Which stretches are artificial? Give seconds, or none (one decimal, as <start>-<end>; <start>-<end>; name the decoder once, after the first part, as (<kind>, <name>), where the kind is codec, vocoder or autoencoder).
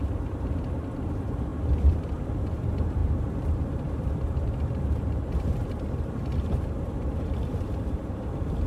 0.0-1.5 (vocoder, BigVGAN v2); 2.4-8.7